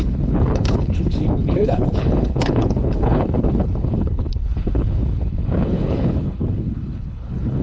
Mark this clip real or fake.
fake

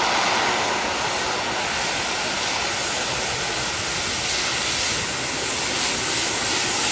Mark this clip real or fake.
real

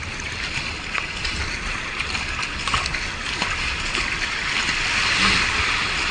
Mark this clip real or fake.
real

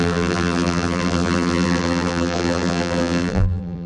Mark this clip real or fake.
fake